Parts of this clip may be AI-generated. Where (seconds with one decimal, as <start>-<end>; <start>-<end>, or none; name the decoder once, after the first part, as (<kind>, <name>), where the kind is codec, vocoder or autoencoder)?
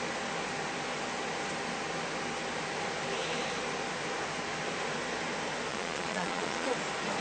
5.7-6.7 (vocoder, Vocos)